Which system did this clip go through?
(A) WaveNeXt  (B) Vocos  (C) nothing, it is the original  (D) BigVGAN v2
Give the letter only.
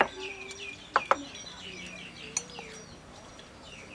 C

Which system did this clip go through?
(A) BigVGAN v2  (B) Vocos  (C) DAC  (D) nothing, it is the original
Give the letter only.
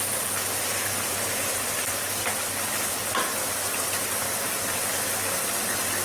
D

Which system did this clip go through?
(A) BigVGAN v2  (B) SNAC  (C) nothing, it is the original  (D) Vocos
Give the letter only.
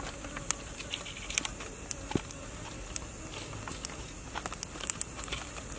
C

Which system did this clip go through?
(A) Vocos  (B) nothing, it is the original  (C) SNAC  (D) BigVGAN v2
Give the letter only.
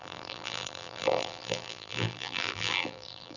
D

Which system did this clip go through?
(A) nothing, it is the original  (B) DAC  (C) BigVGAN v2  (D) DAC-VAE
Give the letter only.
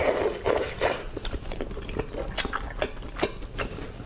A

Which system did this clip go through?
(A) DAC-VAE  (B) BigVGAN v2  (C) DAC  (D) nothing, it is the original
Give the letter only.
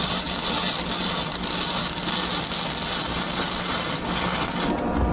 D